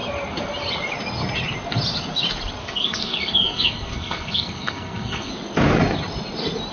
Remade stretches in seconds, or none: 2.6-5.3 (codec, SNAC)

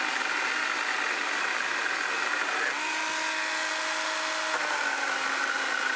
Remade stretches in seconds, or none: none

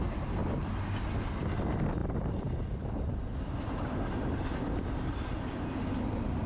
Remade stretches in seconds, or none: none

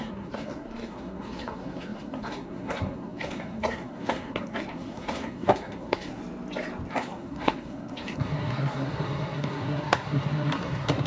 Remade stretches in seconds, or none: 0.0-6.2 (codec, SNAC); 6.9-11.1